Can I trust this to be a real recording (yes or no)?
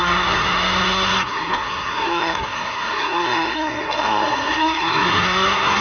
no